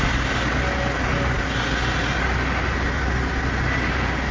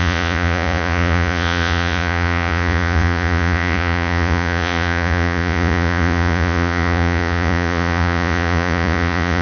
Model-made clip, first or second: second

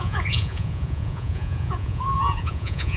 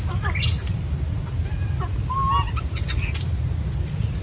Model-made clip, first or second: first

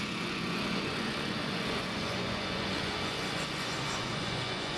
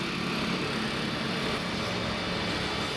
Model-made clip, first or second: first